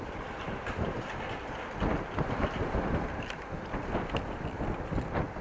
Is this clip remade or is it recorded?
recorded